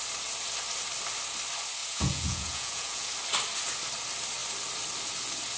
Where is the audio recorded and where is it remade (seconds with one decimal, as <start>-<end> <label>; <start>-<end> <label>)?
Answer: 0.0-1.8 recorded; 1.8-3.1 remade; 3.1-5.6 recorded